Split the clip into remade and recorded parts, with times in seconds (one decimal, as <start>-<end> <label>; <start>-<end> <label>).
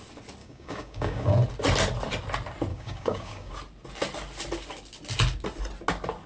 0.0-0.4 recorded; 0.4-1.3 remade; 1.3-2.7 recorded; 2.7-3.5 remade; 3.5-6.3 recorded